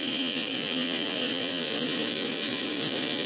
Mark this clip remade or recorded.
remade